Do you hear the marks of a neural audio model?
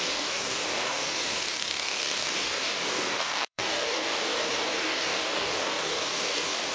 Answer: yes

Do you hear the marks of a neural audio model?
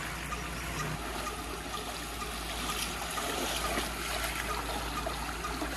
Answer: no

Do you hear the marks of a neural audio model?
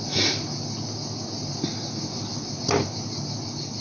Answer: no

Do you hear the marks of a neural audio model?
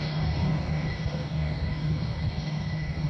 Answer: yes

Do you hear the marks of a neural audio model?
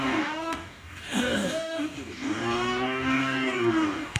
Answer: yes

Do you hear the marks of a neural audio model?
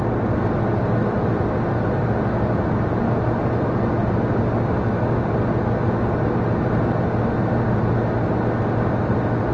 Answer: no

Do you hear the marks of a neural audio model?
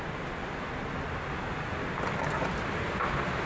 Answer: no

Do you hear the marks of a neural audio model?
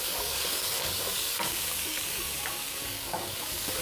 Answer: yes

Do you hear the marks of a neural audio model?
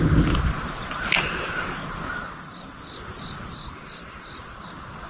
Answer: no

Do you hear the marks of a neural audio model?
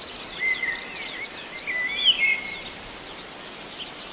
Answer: no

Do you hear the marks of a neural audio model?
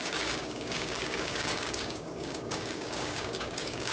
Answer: yes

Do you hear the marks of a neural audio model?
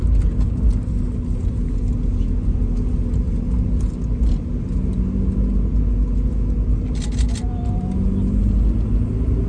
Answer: no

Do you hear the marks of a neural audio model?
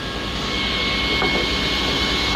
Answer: no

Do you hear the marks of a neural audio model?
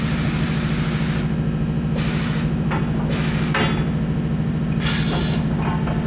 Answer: no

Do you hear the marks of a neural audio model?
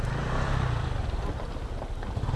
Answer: no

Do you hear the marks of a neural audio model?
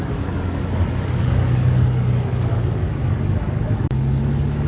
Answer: yes